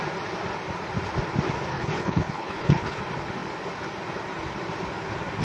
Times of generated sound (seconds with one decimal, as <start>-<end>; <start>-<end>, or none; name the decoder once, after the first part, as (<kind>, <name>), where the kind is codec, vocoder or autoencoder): 1.7-3.0 (codec, HILCodec)